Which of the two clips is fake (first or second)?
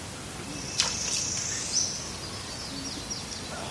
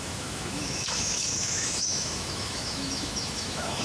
second